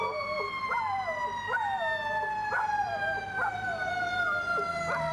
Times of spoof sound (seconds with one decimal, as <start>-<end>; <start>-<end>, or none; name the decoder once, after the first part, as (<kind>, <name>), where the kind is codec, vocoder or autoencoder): 2.4-5.1 (vocoder, BigVGAN v2)